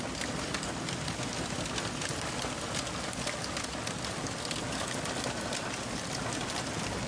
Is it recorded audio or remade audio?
recorded